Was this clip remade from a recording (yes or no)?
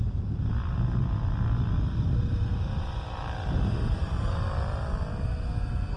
no